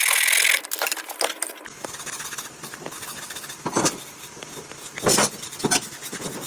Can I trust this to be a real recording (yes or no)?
yes